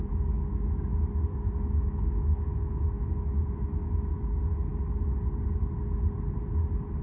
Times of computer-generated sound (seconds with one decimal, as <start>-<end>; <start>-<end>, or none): 0.0-4.2